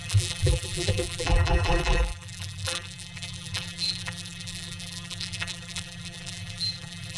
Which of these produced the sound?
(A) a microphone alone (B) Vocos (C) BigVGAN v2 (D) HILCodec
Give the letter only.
C